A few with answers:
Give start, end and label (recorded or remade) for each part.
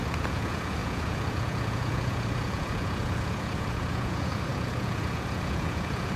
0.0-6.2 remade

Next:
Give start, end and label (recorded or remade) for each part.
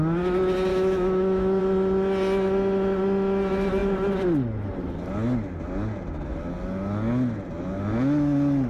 0.0-0.7 recorded; 0.7-1.6 remade; 1.6-8.7 recorded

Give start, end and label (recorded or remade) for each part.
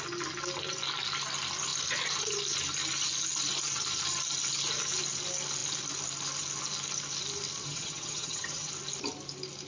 0.0-7.6 recorded; 7.6-8.7 remade; 8.7-9.7 recorded